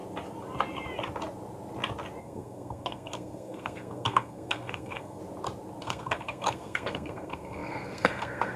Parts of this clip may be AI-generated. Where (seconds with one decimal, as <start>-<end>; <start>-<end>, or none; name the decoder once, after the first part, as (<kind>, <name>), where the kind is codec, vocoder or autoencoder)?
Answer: 2.2-5.2 (codec, SNAC); 5.8-8.6